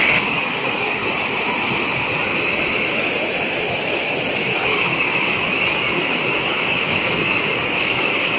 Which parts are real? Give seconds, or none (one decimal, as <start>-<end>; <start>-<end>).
1.0-4.6

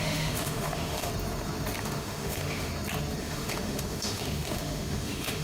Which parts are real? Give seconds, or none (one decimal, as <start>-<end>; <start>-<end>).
1.1-1.8; 2.7-3.2